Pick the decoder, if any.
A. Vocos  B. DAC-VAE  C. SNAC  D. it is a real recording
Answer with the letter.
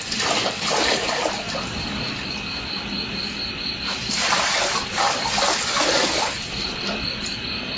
D